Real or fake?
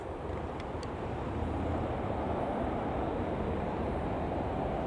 real